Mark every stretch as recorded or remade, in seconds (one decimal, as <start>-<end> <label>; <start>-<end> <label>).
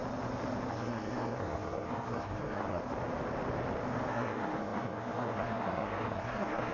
0.0-0.7 recorded; 0.7-2.8 remade; 2.8-4.1 recorded; 4.1-6.7 remade